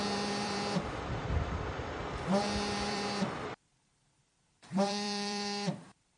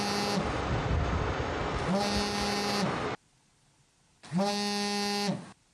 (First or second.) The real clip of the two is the second